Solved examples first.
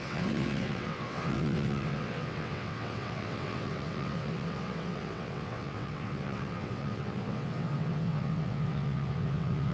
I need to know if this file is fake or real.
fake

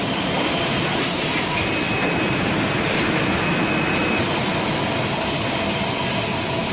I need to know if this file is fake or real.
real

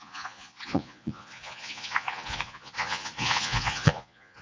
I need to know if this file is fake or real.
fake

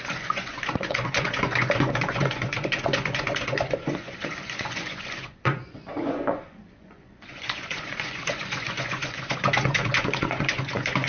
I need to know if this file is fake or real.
fake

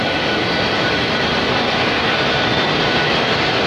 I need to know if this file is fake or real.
fake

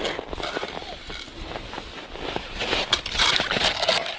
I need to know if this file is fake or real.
real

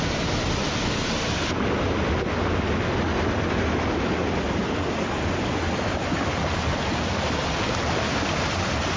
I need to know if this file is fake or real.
real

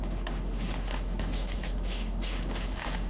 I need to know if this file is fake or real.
fake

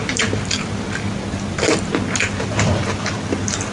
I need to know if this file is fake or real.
real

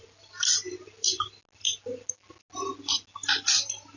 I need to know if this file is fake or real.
real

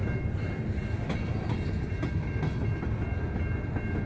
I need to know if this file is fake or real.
real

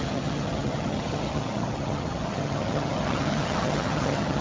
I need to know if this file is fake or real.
fake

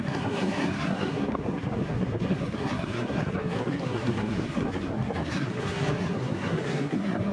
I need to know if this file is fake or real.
fake